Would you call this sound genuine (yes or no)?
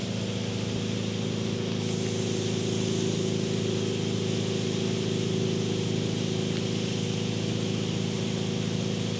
yes